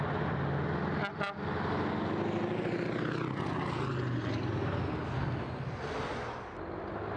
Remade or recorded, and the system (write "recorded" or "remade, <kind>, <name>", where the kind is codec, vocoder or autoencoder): recorded